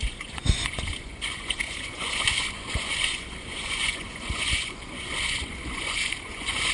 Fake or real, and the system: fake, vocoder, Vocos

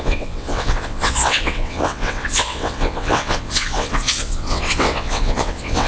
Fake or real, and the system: fake, vocoder, WaveNeXt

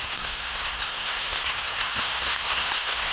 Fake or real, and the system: fake, codec, SNAC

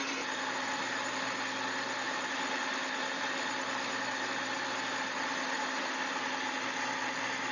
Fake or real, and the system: real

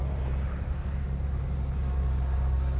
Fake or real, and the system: real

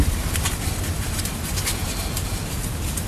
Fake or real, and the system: fake, vocoder, BigVGAN v2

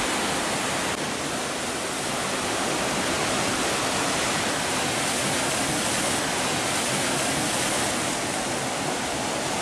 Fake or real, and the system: real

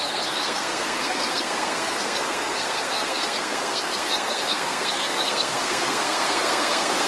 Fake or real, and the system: fake, codec, SNAC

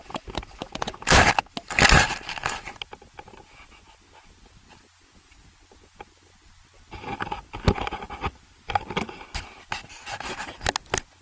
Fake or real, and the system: real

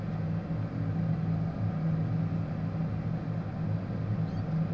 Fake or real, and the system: real